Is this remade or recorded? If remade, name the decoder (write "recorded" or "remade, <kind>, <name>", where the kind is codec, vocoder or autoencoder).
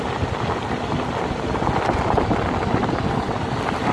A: recorded